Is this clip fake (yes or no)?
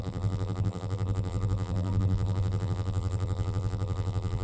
yes